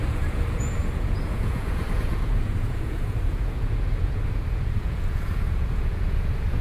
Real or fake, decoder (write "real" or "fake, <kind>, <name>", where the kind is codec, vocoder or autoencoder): fake, vocoder, Vocos